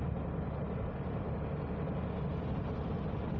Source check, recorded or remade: recorded